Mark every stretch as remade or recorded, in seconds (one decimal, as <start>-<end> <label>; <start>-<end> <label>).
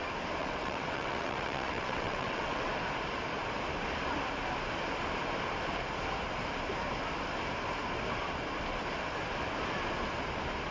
0.0-0.4 recorded; 0.4-2.7 remade; 2.7-10.7 recorded